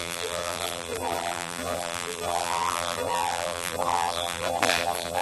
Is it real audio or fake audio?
fake